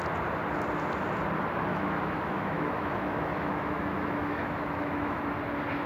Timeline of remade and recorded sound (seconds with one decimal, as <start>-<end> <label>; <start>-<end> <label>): 0.0-1.7 recorded; 1.7-5.2 remade; 5.2-5.9 recorded